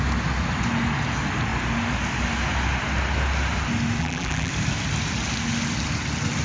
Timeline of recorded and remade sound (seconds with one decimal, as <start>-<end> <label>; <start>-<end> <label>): 0.0-4.0 recorded; 4.0-4.5 remade; 4.5-6.4 recorded